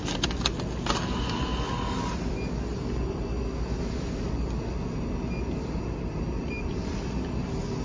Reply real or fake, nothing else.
real